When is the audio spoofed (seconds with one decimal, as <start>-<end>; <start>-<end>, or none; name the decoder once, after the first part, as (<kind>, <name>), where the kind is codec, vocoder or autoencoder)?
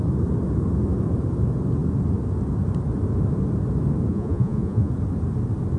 4.1-4.9 (vocoder, Vocos)